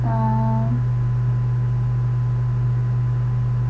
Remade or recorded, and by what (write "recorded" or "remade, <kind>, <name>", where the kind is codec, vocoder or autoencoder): recorded